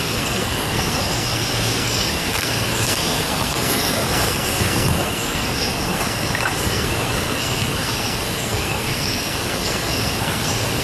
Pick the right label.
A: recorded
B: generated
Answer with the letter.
B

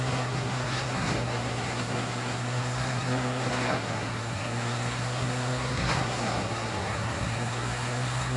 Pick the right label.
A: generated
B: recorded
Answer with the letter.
A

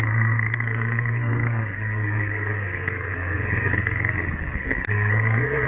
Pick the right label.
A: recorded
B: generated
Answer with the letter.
B